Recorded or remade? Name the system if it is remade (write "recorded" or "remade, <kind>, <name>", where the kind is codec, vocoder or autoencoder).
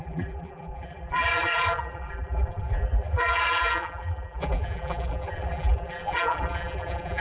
remade, vocoder, BigVGAN v2